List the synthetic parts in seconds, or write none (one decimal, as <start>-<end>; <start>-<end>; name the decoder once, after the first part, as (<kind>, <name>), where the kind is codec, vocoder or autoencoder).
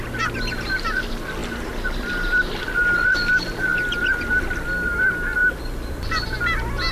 1.4-2.6 (vocoder, BigVGAN v2); 5.4-6.1